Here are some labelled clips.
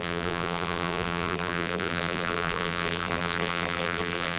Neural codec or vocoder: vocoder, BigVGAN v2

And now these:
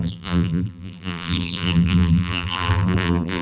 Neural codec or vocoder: vocoder, BigVGAN v2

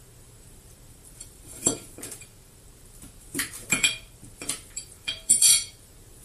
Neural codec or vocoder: vocoder, BigVGAN v2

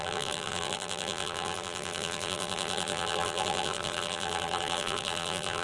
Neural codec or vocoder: vocoder, BigVGAN v2